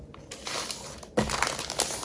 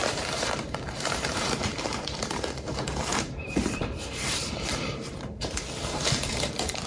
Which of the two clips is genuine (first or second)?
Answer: first